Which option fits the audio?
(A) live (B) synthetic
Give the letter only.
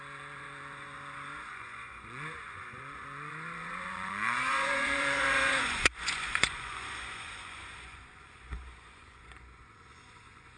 B